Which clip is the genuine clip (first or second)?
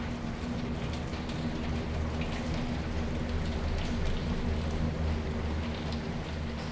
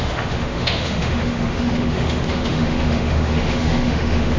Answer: first